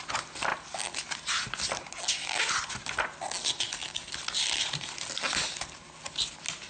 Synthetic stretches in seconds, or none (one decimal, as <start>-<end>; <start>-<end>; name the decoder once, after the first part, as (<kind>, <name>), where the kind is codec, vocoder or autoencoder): none